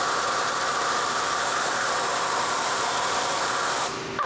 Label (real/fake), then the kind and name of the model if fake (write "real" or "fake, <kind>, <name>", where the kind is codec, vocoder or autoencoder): fake, vocoder, BigVGAN v2